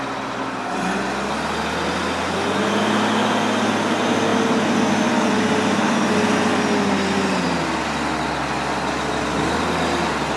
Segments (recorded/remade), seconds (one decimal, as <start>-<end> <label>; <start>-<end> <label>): 0.0-10.4 recorded